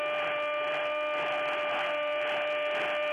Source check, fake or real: real